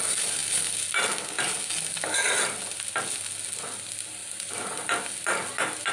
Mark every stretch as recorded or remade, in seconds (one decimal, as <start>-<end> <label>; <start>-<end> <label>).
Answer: 0.0-5.9 recorded